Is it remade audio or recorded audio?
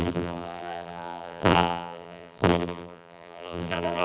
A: remade